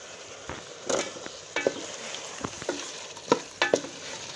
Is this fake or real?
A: real